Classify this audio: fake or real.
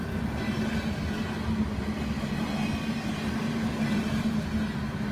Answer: real